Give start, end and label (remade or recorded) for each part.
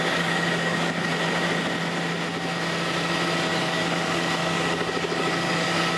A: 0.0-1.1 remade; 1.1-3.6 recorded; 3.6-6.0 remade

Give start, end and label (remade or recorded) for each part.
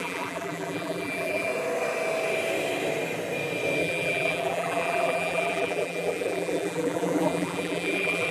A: 0.0-1.5 remade; 1.5-3.8 recorded; 3.8-8.3 remade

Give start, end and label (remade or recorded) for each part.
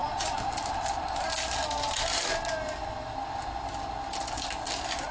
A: 0.0-5.1 recorded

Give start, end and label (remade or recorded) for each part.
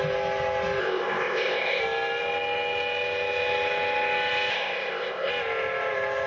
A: 0.0-0.8 recorded; 0.8-1.8 remade; 1.8-4.5 recorded; 4.5-5.3 remade; 5.3-6.3 recorded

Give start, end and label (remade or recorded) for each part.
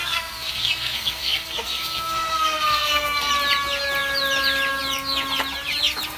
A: 0.0-3.3 remade; 3.3-6.2 recorded